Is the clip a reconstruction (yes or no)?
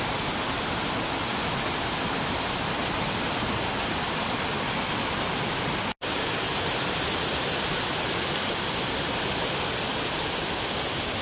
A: no